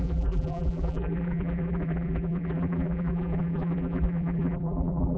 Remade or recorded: remade